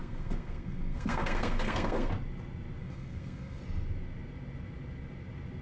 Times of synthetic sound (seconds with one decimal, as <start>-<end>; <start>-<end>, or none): 0.0-2.1; 2.8-3.6